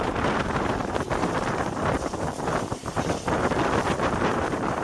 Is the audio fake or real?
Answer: fake